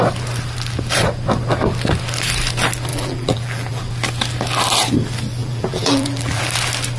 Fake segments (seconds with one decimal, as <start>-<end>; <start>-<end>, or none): 2.9-3.9; 5.4-6.4